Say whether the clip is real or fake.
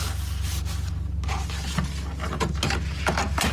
real